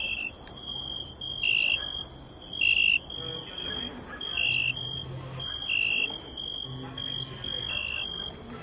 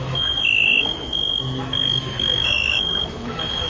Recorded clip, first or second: first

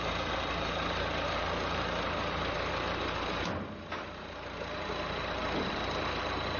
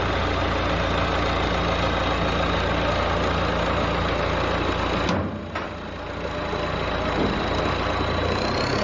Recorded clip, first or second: second